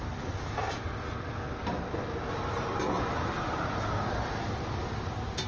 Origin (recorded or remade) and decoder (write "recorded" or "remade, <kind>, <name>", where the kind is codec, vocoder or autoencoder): recorded